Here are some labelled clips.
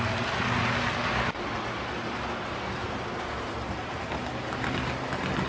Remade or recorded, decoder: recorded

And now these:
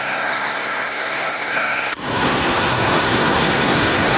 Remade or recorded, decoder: remade, codec, SNAC